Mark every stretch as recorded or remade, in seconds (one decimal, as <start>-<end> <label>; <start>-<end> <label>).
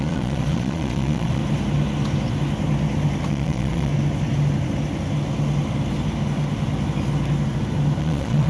0.0-1.4 remade; 1.4-3.3 recorded; 3.3-3.9 remade; 3.9-8.0 recorded; 8.0-8.5 remade